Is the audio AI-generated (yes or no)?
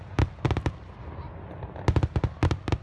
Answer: no